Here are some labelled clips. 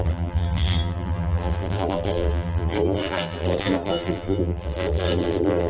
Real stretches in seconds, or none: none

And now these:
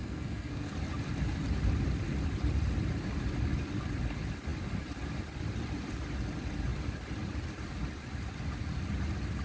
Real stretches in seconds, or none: 0.7-9.4